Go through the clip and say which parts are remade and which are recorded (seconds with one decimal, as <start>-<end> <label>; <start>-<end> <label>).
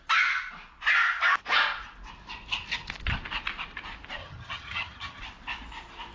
0.0-4.2 recorded; 4.2-5.2 remade; 5.2-6.1 recorded